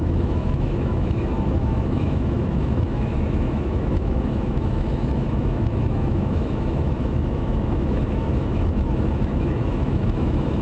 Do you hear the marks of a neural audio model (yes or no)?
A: yes